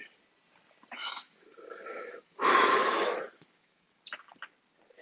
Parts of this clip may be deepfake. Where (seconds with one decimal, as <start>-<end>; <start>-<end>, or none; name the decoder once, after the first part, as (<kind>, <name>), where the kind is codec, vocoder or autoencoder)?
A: 1.0-4.0 (autoencoder, DAC-VAE)